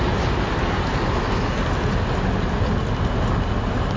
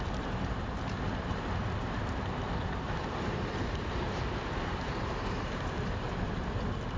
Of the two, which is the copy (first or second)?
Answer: second